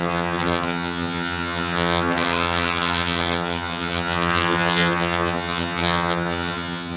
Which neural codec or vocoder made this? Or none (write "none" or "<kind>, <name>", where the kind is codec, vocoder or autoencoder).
vocoder, HiFi-GAN